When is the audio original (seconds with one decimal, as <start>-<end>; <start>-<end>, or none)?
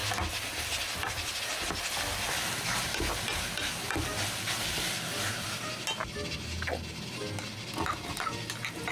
0.0-8.9